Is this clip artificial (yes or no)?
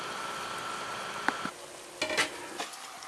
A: no